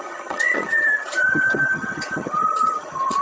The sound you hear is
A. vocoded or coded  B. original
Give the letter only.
A